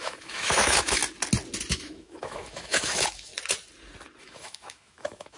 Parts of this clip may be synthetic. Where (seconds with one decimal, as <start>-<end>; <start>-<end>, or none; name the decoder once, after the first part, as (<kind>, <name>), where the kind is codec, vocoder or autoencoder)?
0.0-1.0 (autoencoder, DAC-VAE); 1.7-3.3; 4.2-5.4